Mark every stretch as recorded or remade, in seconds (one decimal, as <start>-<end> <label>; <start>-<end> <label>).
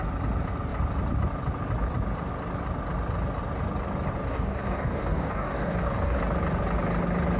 0.0-4.3 recorded; 4.3-6.2 remade; 6.2-7.4 recorded